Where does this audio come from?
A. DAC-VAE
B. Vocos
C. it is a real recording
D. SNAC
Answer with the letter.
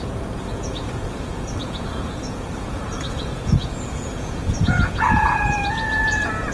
B